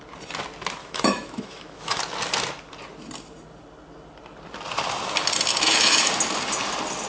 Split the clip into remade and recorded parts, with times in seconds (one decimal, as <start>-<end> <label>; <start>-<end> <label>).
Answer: 0.0-0.8 recorded; 0.8-2.0 remade; 2.0-5.5 recorded; 5.5-6.1 remade; 6.1-7.1 recorded